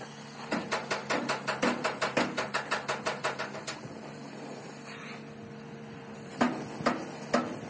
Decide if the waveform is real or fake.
real